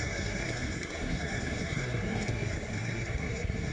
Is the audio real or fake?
fake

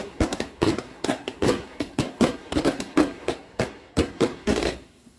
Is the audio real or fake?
fake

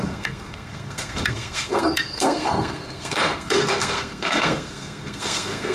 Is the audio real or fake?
fake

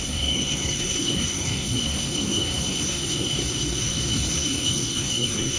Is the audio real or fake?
fake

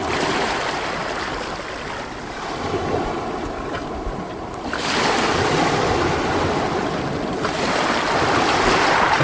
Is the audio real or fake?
real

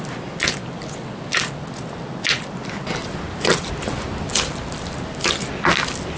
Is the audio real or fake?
real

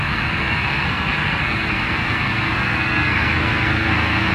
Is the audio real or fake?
fake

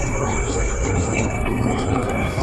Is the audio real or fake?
fake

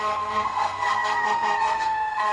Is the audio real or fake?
fake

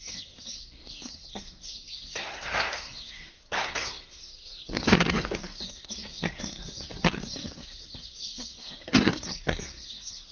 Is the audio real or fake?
fake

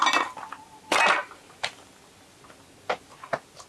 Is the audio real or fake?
real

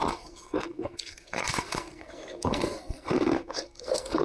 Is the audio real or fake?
fake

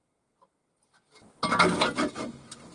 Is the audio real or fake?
real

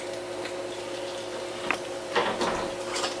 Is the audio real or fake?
real